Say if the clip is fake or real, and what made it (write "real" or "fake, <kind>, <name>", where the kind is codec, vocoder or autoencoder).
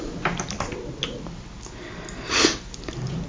real